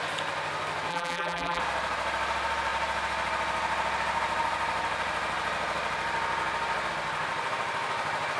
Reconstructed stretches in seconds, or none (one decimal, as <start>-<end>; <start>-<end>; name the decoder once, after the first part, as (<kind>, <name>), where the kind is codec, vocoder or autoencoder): 0.9-1.6 (vocoder, BigVGAN v2)